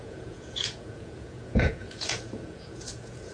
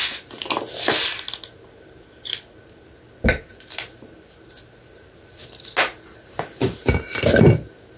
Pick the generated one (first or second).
first